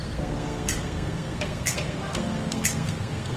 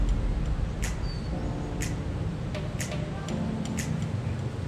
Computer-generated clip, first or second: first